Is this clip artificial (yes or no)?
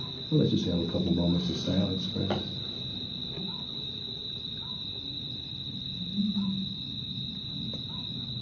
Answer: no